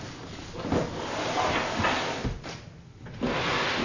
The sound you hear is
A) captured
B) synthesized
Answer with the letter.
A